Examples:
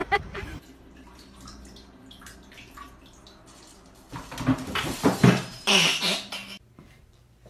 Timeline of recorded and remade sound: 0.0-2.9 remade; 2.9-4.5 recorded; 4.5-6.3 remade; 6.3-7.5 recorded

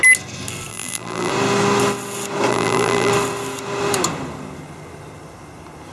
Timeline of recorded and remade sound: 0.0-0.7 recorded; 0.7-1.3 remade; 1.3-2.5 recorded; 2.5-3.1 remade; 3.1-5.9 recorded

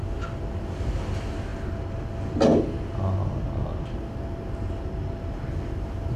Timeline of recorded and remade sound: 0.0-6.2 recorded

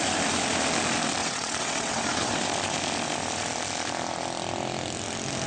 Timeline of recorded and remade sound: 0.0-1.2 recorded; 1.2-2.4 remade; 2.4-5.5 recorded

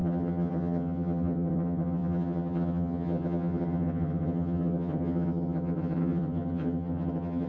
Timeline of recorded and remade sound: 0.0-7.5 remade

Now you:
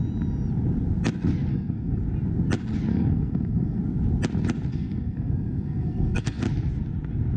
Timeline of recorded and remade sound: 0.0-1.5 recorded; 1.5-2.0 remade; 2.0-2.9 recorded; 2.9-3.8 remade; 3.8-4.7 recorded; 4.7-6.4 remade; 6.4-7.4 recorded